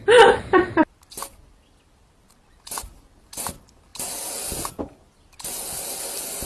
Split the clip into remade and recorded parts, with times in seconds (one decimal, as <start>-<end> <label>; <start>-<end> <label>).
0.0-6.5 recorded